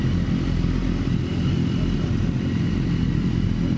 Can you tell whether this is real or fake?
real